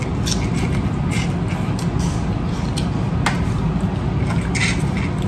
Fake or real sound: real